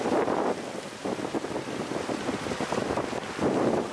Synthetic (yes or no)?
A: no